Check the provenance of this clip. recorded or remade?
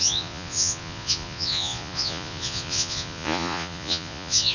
remade